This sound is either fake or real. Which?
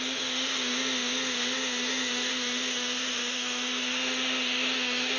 fake